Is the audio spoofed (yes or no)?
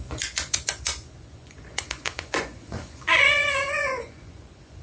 yes